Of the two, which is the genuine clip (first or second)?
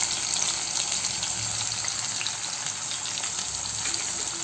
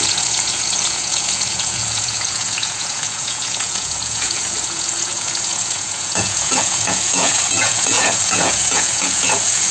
first